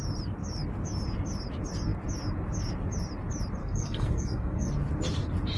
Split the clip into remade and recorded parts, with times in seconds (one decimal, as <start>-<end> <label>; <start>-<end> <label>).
0.0-3.6 recorded; 3.6-4.7 remade; 4.7-5.6 recorded